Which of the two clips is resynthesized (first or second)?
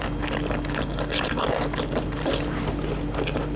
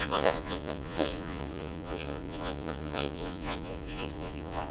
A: second